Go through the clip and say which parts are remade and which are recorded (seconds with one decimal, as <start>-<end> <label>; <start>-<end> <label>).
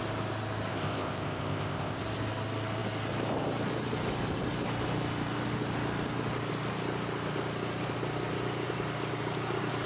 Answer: 0.0-0.7 recorded; 0.7-2.0 remade; 2.0-9.9 recorded